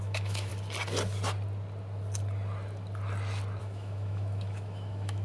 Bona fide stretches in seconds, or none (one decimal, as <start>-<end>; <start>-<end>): 0.5-3.6